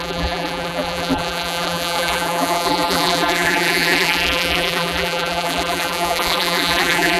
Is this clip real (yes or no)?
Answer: no